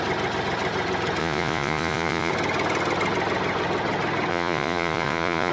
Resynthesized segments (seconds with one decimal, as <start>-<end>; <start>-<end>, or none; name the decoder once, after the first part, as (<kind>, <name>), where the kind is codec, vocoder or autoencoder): 1.2-2.3 (vocoder, Vocos); 4.3-5.5